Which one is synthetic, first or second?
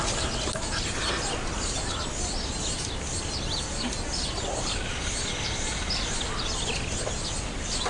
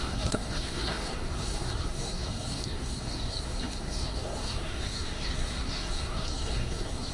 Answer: second